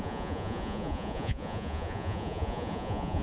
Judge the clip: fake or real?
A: fake